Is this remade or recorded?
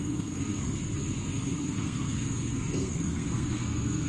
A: remade